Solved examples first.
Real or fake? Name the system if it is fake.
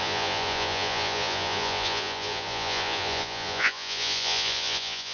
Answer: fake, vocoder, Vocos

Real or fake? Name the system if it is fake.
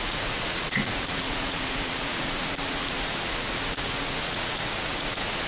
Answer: fake, vocoder, Vocos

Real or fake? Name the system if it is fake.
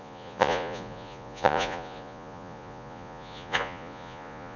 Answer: fake, vocoder, Vocos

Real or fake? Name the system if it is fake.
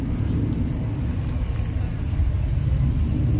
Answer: real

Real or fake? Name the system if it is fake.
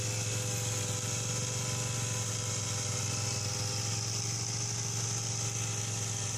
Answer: real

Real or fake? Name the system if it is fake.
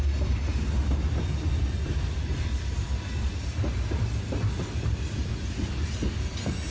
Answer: real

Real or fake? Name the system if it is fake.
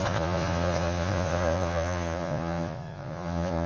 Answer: fake, vocoder, Vocos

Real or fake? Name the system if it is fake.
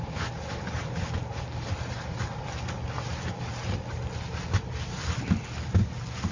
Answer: real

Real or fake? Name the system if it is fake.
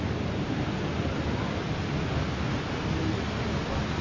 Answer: real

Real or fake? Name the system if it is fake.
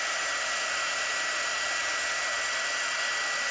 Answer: real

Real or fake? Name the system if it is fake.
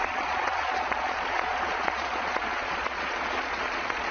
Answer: fake, vocoder, Vocos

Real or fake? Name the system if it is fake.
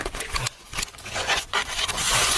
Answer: fake, vocoder, Vocos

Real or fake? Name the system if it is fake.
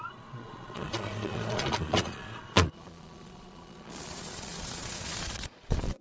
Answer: fake, vocoder, Vocos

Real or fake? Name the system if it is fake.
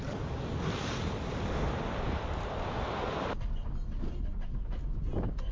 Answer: real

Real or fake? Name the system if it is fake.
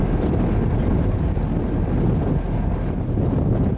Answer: real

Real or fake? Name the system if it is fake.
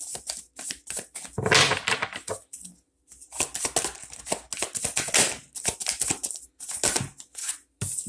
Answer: real